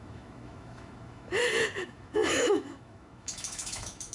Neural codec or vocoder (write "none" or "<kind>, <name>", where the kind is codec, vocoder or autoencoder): autoencoder, DAC-VAE